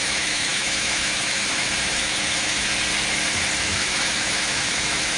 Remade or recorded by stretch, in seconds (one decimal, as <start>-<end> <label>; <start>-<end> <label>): 0.0-2.7 remade; 2.7-3.6 recorded; 3.6-5.2 remade

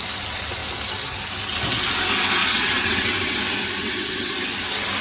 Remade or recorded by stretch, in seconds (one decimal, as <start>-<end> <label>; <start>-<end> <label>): 0.0-2.4 recorded; 2.4-3.4 remade; 3.4-3.8 recorded; 3.8-4.3 remade; 4.3-5.0 recorded

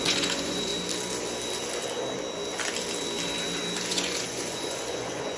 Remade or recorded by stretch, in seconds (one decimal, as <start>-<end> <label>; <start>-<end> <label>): 0.0-0.7 remade; 0.7-3.9 recorded; 3.9-5.4 remade

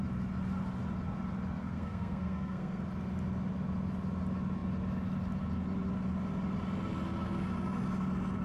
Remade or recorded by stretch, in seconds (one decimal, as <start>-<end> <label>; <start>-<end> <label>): 0.0-1.6 recorded; 1.6-2.8 remade; 2.8-8.4 recorded

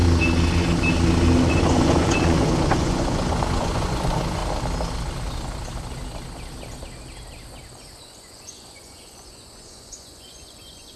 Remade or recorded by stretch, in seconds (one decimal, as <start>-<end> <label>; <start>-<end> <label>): 0.0-1.5 recorded; 1.5-4.4 remade; 4.4-8.0 recorded; 8.0-11.0 remade

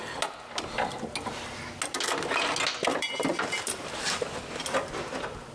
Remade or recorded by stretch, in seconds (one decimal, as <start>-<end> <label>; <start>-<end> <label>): 0.0-2.9 recorded; 2.9-3.7 remade; 3.7-5.5 recorded

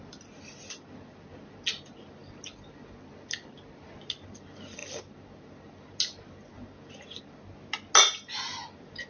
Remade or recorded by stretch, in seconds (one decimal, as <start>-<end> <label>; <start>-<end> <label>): 0.0-9.1 recorded